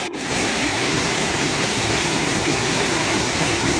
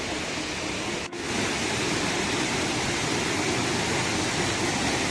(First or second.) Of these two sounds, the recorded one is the second